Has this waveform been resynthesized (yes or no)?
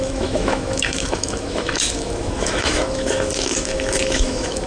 yes